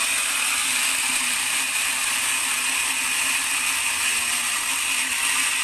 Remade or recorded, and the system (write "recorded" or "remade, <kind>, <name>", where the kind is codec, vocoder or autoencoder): recorded